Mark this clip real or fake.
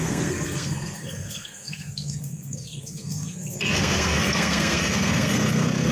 fake